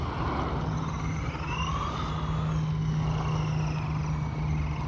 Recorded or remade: recorded